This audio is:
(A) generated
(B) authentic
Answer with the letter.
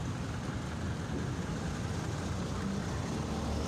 B